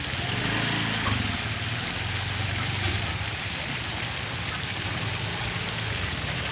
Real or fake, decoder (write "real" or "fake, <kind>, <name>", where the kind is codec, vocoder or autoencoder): real